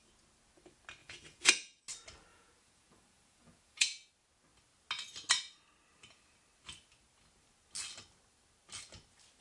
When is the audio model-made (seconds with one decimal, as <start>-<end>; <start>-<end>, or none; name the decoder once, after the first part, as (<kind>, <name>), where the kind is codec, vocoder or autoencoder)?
1.0-1.8 (vocoder, Vocos); 2.3-4.1